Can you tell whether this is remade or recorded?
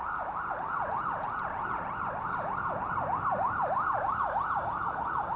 recorded